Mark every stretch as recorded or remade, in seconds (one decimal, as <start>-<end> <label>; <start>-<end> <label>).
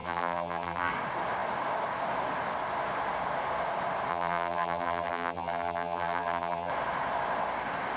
0.0-0.9 remade; 0.9-4.1 recorded; 4.1-6.7 remade; 6.7-8.0 recorded